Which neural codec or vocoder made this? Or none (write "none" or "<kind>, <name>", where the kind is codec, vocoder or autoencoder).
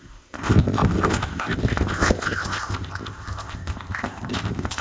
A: codec, ZipCodec